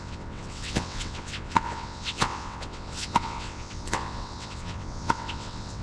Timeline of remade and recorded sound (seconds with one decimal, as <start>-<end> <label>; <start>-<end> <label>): 0.0-5.8 remade